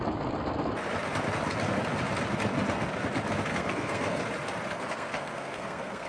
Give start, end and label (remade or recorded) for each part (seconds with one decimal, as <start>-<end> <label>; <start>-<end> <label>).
0.0-3.5 recorded; 3.5-4.2 remade; 4.2-4.7 recorded; 4.7-6.1 remade

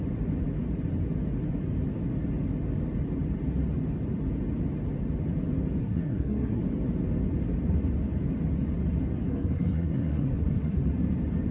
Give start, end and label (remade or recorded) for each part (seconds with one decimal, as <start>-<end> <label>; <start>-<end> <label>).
0.0-5.8 recorded; 5.8-6.6 remade; 6.6-9.3 recorded; 9.3-10.9 remade; 10.9-11.5 recorded